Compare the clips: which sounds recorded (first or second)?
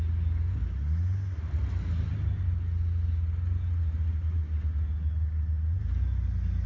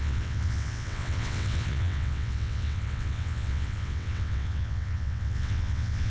first